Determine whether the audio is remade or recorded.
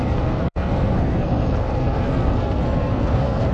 remade